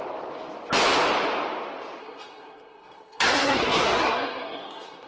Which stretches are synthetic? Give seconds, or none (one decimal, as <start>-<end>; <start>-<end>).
2.0-5.1